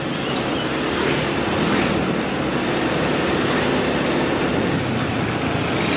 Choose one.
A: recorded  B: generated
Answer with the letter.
A